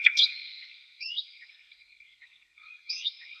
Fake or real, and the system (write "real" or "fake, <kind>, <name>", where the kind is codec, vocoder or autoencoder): fake, codec, SNAC